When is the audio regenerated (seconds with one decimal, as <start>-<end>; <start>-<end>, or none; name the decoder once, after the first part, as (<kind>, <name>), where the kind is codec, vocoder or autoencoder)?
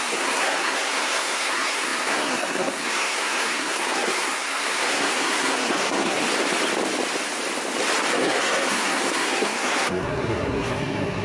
0.0-6.2 (codec, SNAC); 8.1-11.2